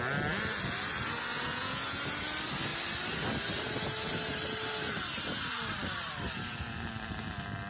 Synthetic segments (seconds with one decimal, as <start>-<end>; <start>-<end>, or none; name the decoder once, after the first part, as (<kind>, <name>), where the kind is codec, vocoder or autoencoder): 1.3-2.0 (vocoder, Vocos)